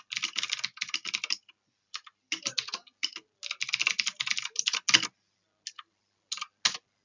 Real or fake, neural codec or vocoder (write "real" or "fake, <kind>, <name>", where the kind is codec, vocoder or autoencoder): real